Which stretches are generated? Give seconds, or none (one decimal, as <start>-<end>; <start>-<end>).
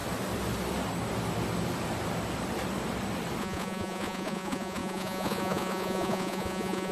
3.4-6.9